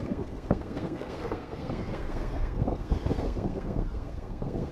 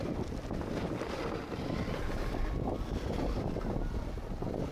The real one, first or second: second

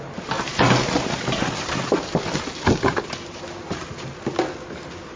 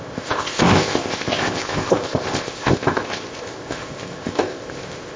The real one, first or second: first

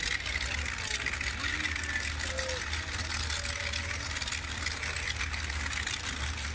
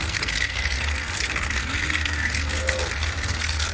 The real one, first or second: first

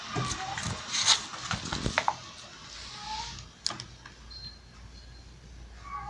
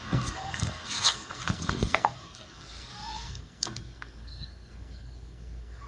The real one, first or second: first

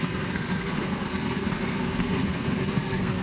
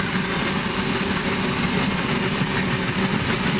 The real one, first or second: second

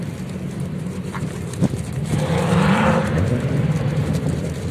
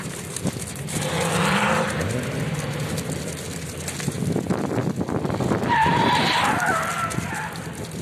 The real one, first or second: second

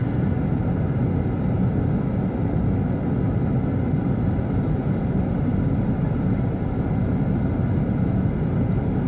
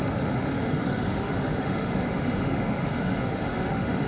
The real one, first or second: first